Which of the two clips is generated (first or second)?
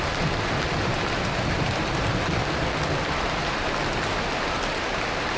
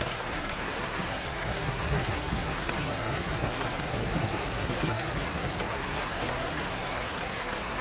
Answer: second